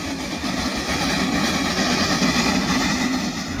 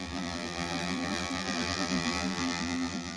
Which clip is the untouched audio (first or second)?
first